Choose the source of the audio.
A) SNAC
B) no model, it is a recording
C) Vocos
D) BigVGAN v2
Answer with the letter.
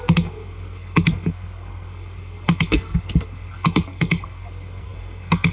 A